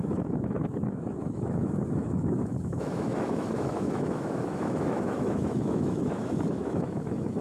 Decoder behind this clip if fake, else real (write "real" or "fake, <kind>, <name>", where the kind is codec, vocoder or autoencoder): fake, autoencoder, DAC-VAE